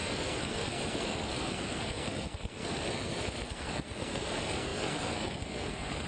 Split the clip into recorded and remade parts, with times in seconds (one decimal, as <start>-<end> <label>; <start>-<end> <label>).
0.0-6.1 remade